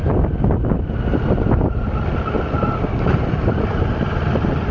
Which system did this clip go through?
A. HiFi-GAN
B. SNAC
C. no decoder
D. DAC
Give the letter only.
C